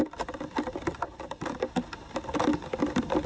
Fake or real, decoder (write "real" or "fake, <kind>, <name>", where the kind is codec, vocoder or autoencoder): real